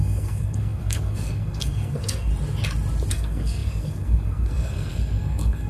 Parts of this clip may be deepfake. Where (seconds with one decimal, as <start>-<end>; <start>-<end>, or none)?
0.0-2.3; 3.1-5.7

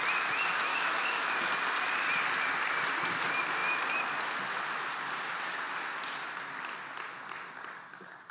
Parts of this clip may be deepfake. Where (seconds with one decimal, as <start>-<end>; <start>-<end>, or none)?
0.7-1.3